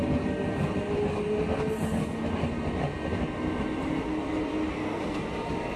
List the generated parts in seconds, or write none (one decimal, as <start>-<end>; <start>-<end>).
4.7-5.2